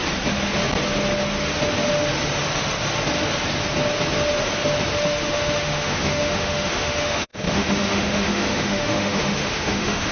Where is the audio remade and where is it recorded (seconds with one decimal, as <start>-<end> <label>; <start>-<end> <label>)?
0.0-4.9 recorded; 4.9-10.1 remade